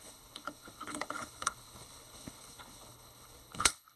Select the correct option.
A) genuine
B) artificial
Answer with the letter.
B